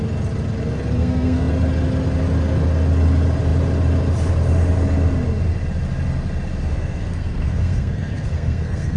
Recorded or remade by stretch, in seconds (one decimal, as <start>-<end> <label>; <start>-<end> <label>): 0.0-1.0 recorded; 1.0-1.5 remade; 1.5-6.6 recorded; 6.6-9.0 remade